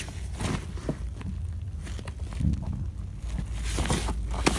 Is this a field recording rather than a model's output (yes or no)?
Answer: yes